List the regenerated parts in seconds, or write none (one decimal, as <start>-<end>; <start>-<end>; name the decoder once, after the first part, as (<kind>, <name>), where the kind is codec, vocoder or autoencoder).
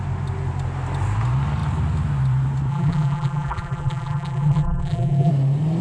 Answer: 2.7-5.3 (vocoder, BigVGAN v2)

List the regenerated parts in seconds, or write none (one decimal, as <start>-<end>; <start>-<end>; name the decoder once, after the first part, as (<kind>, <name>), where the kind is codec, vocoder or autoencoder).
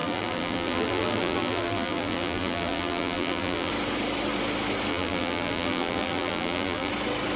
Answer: 0.0-3.7 (vocoder, BigVGAN v2); 4.9-6.9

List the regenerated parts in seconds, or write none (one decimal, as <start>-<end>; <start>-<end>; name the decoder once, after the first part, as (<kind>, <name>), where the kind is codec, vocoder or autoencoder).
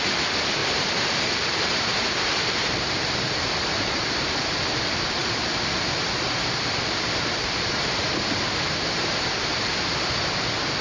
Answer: 0.6-4.6 (vocoder, BigVGAN v2); 5.2-10.1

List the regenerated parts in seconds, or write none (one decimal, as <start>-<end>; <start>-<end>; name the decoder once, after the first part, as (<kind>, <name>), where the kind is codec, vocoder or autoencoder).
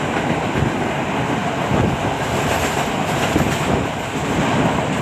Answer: none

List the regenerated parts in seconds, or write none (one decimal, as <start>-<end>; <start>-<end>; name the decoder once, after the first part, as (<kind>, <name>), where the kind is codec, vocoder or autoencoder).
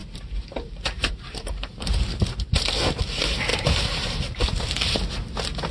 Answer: 0.0-2.7 (vocoder, BigVGAN v2); 3.5-5.1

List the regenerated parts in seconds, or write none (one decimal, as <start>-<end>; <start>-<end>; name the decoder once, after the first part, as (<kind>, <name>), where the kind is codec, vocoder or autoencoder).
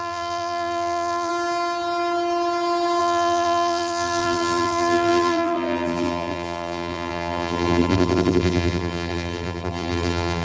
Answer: 0.0-1.3 (vocoder, BigVGAN v2); 3.0-10.4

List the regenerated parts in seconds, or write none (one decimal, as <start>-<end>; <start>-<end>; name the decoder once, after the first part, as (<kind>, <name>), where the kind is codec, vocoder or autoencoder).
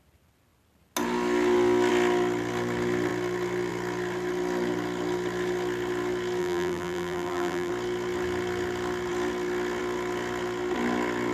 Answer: 6.4-7.7 (vocoder, BigVGAN v2)